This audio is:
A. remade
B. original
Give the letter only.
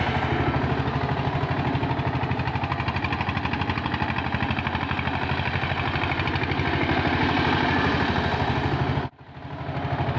B